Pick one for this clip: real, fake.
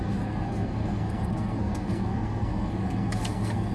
fake